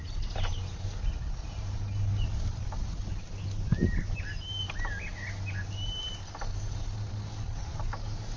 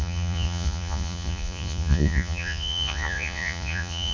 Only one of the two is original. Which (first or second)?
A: first